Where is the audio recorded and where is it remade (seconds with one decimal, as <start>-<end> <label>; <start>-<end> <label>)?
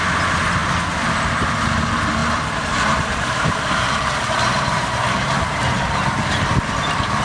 0.0-2.2 recorded; 2.2-6.5 remade; 6.5-7.2 recorded